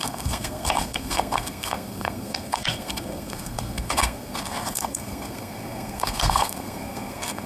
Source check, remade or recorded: remade